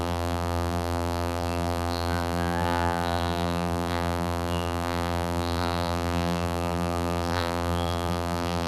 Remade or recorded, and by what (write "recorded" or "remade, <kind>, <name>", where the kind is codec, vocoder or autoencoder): remade, vocoder, BigVGAN v2